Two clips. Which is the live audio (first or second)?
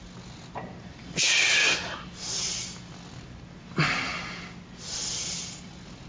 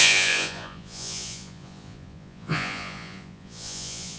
first